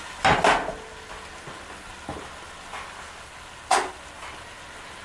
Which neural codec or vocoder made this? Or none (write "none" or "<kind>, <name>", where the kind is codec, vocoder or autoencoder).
none